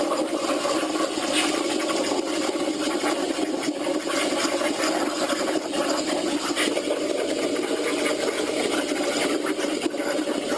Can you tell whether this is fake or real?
real